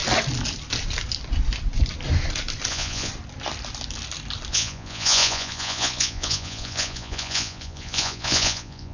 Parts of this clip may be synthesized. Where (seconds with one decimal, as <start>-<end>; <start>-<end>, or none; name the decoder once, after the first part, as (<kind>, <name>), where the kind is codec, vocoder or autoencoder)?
2.7-3.1 (vocoder, Vocos); 4.5-8.9

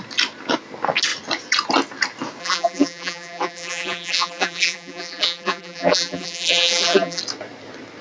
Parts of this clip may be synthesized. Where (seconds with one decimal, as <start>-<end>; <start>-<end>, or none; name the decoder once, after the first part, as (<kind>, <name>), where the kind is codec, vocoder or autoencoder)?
2.4-7.2 (vocoder, BigVGAN v2)